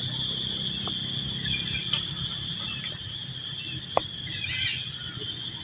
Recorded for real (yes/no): yes